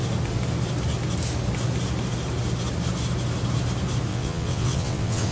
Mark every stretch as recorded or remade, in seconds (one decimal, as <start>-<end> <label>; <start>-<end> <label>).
0.0-4.1 recorded; 4.1-5.3 remade